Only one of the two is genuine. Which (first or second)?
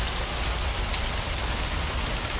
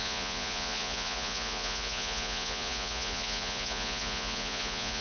first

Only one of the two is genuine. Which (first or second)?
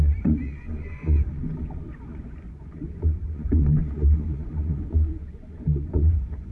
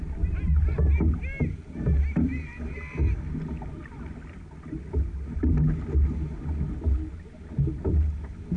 second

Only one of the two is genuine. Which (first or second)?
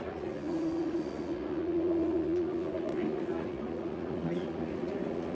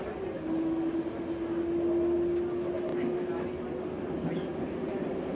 second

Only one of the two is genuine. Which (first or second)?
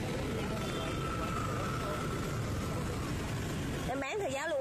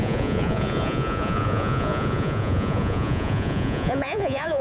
first